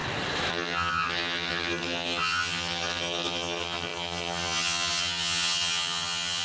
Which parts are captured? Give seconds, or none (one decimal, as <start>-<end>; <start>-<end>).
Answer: 0.0-0.5